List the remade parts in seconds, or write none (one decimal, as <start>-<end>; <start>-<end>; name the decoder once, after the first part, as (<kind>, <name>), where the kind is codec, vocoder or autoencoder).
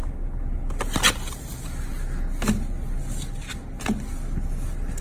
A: none